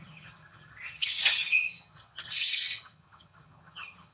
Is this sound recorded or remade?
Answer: remade